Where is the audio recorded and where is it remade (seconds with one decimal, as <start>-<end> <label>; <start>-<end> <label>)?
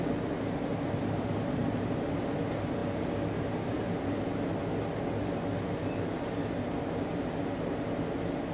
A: 0.0-8.5 recorded